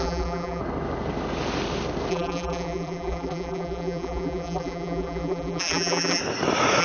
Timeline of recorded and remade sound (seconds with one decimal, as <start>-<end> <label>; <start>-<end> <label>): 0.0-0.6 remade; 0.6-2.1 recorded; 2.1-6.2 remade; 6.2-6.8 recorded